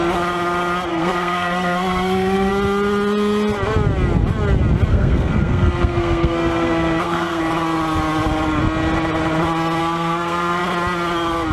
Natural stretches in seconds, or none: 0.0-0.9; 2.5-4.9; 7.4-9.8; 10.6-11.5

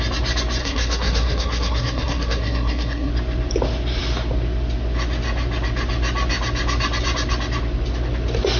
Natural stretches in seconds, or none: 0.0-0.6; 3.1-8.6

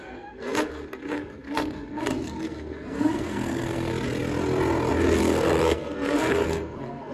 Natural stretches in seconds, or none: 3.9-5.2

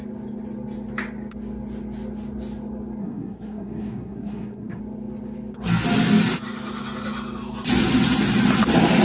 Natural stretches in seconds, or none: 0.0-3.0; 4.8-9.0

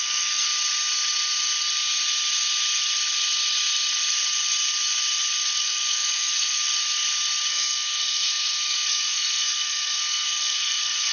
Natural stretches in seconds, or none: 0.5-5.6; 6.6-7.5

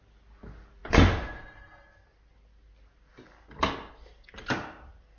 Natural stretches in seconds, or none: 0.0-5.2